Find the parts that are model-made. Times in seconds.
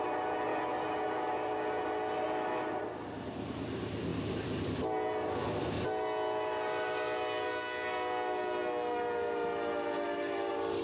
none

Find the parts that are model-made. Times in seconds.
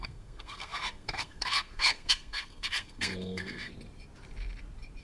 0.0-3.7 (codec, SNAC)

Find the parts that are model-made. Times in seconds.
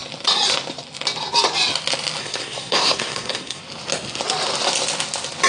2.2-3.6 (codec, SNAC)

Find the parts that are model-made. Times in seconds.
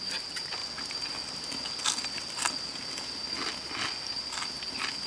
none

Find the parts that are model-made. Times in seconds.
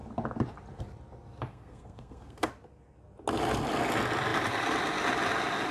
1.5-2.5 (codec, SNAC)